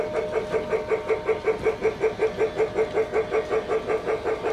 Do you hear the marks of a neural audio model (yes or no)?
no